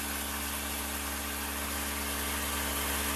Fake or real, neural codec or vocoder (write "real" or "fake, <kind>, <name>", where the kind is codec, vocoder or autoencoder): real